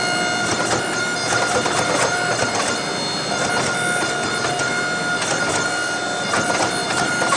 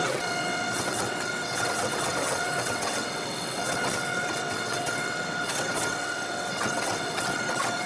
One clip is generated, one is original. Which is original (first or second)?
first